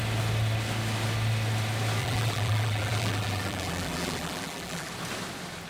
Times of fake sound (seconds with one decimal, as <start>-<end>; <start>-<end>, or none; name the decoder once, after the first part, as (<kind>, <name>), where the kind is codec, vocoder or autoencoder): 2.0-4.9 (vocoder, BigVGAN v2)